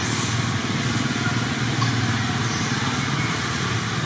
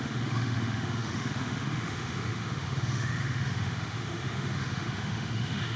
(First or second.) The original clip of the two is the first